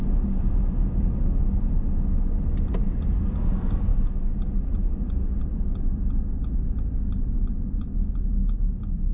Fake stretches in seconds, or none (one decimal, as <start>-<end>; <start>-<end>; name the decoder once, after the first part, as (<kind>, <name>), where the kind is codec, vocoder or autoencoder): none